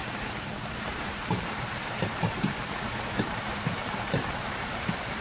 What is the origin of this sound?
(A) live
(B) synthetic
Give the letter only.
B